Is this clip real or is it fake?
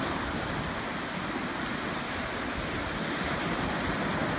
real